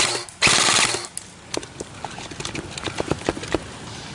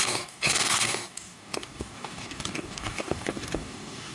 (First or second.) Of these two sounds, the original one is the first